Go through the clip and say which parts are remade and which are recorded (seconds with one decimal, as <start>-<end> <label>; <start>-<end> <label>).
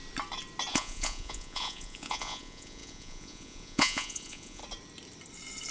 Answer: 0.0-0.7 recorded; 0.7-4.6 remade; 4.6-5.7 recorded